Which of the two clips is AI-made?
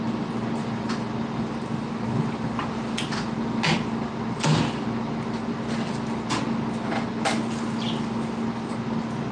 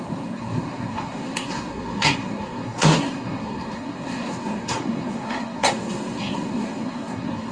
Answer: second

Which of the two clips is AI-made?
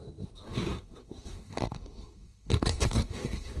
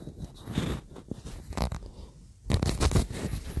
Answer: first